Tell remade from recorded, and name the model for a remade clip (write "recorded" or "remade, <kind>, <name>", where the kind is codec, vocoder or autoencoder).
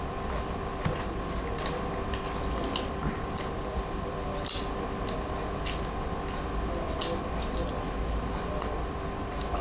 recorded